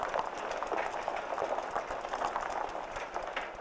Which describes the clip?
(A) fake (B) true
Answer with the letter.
B